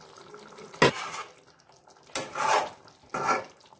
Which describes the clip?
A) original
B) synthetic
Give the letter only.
A